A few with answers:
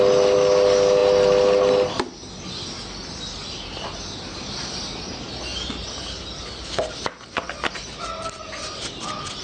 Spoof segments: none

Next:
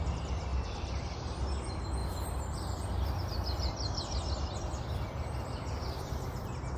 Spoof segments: 0.5-1.3 (vocoder, BigVGAN v2); 2.0-6.1

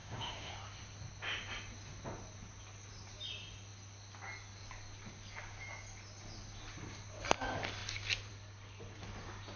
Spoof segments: 0.0-0.5 (autoencoder, DAC-VAE)

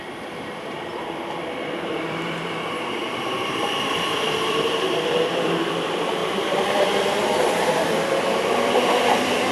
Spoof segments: 0.0-9.5 (vocoder, BigVGAN v2)

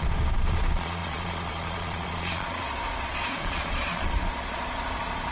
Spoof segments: 0.0-5.3 (vocoder, Vocos)

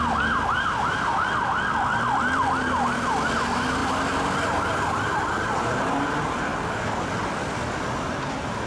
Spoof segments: none

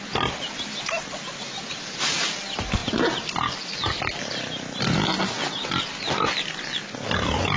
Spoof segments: none